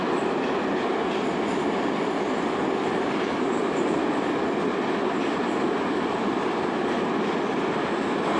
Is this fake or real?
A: real